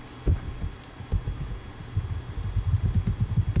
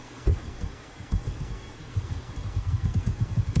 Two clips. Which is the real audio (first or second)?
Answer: first